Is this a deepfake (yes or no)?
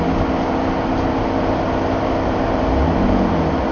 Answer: no